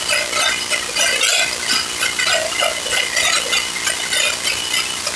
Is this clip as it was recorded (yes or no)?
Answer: yes